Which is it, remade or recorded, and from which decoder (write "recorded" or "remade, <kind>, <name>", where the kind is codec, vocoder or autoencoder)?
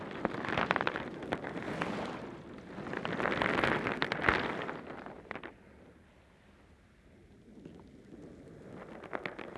recorded